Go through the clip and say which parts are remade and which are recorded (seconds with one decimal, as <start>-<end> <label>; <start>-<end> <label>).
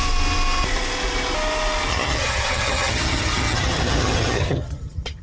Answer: 0.0-1.9 recorded; 1.9-5.2 remade